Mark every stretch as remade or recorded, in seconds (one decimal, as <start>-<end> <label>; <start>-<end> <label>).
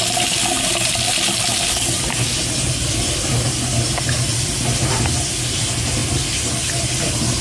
0.0-7.4 recorded